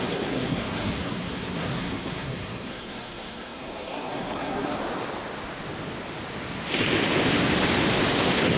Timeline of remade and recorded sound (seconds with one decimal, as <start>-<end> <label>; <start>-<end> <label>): 0.0-4.8 remade; 4.8-8.6 recorded